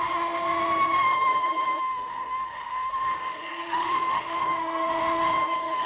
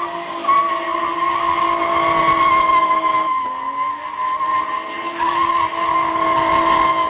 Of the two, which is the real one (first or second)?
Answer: second